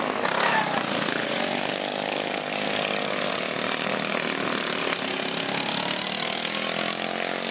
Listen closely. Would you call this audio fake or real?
real